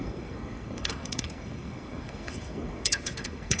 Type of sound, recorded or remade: remade